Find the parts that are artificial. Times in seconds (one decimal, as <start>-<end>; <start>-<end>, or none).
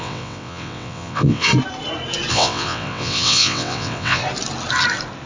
0.0-1.5; 2.3-4.2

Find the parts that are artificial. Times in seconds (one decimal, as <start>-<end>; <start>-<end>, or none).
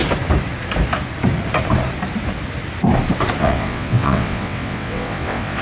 3.4-5.6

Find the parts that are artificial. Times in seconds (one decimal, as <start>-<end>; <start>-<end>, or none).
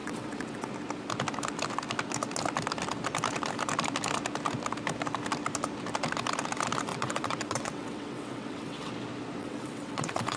0.0-0.7; 6.9-8.9; 9.4-10.4